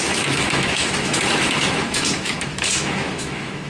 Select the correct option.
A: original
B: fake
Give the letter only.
B